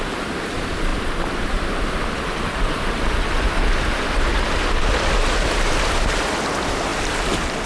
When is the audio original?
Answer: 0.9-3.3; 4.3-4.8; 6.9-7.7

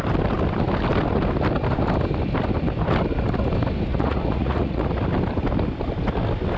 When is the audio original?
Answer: 0.0-3.9; 4.9-6.6

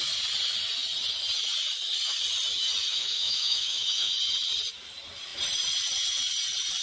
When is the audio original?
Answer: 0.0-2.9; 4.1-6.8

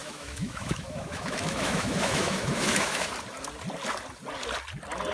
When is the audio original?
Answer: 3.1-5.1

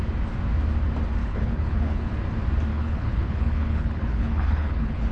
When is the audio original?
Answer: 0.0-1.2; 2.1-2.7

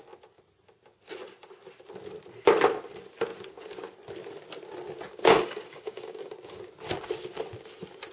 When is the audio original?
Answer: 0.0-5.2; 6.3-8.1